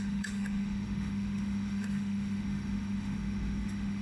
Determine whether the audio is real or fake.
fake